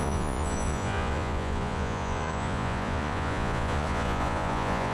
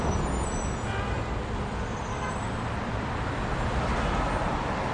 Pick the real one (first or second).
second